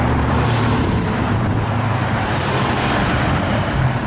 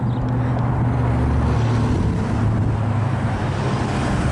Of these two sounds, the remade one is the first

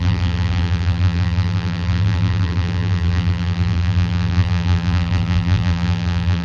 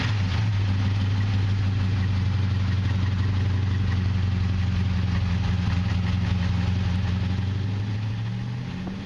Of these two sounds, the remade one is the first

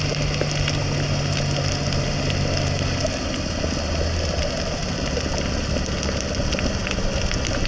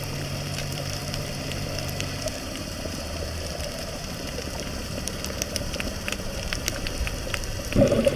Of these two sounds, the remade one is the second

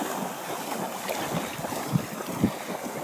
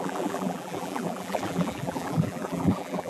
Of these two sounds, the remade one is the second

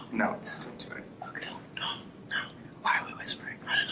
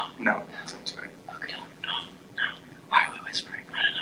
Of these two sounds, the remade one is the second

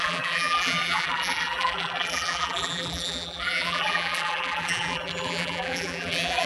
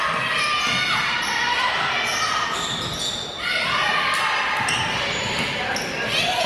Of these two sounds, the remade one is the first